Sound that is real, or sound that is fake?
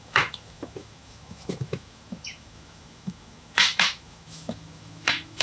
fake